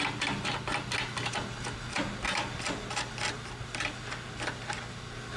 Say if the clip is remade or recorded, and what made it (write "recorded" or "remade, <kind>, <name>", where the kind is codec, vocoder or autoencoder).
recorded